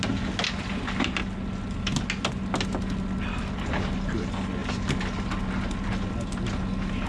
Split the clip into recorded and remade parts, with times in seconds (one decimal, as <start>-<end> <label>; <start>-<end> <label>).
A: 0.0-7.1 recorded